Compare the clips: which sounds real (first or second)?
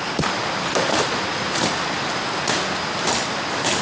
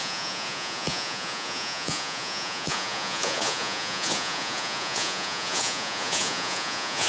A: first